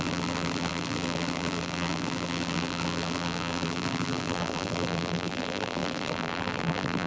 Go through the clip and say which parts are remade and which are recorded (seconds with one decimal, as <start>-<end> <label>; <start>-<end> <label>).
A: 0.0-7.1 remade